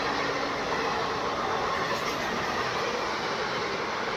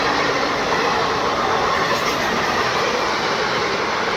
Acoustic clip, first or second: first